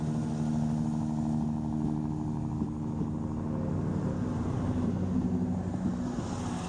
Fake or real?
real